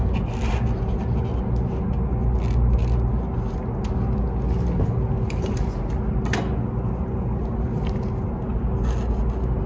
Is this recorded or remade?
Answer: recorded